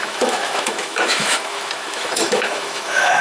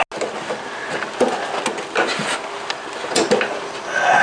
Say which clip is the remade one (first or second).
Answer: first